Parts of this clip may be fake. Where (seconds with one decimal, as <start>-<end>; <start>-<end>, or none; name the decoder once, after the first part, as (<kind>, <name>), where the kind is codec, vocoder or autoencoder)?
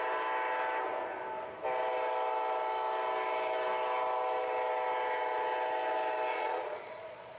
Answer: 6.3-7.4 (vocoder, Vocos)